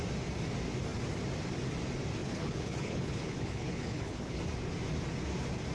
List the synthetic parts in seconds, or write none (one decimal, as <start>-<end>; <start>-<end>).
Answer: 2.2-4.4